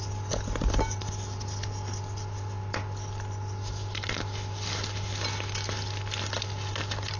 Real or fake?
real